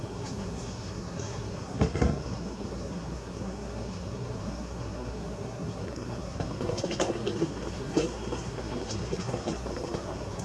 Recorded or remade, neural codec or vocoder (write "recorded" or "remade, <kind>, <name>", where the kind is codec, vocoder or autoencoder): remade, codec, SNAC